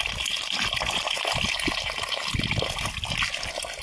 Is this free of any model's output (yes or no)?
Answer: yes